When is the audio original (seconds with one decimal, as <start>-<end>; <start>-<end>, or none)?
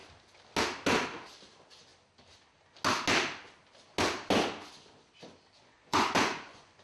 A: 0.0-5.6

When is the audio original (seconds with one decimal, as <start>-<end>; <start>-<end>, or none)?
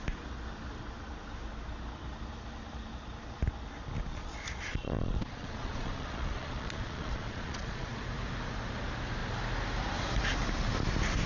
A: 0.0-4.1; 8.0-11.3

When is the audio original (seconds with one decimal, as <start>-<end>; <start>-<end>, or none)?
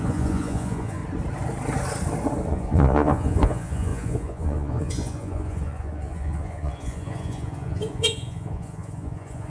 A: 1.0-2.5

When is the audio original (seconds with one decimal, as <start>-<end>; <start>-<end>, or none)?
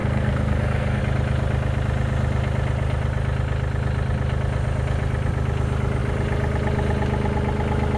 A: 1.0-8.0